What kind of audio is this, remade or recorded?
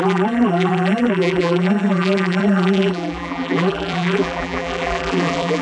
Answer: remade